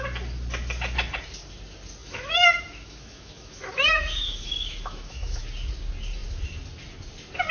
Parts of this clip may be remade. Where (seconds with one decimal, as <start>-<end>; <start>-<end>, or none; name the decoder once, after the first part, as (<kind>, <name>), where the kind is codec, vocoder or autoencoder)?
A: 2.0-5.4 (autoencoder, DAC-VAE)